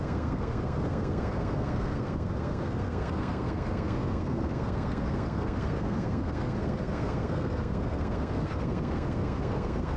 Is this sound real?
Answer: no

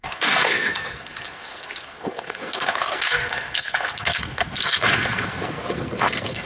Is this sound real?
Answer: no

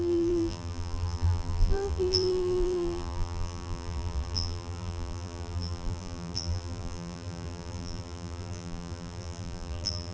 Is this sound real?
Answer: no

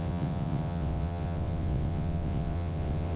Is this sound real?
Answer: no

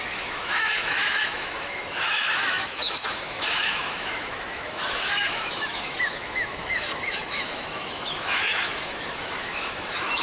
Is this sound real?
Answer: no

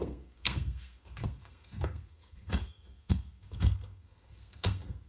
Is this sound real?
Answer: no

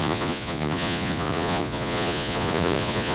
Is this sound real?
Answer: no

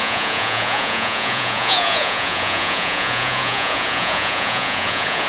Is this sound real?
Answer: no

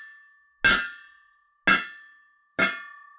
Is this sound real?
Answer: yes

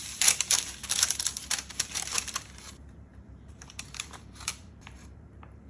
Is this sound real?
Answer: no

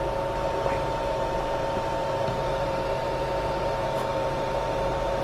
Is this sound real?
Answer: no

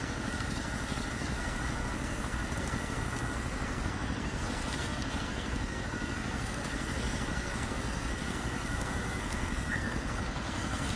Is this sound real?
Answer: no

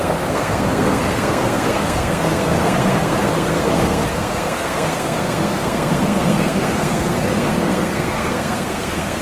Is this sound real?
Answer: no